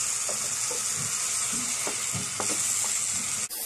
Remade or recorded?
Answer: recorded